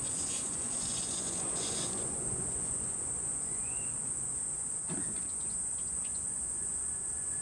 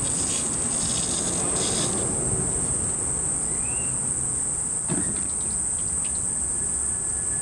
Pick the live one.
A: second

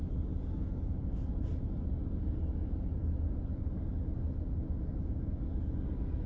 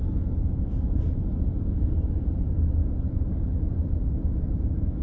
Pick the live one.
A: first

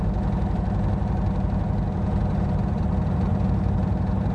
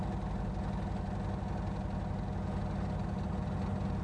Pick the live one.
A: second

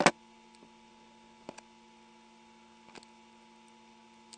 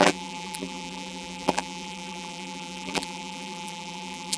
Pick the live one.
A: first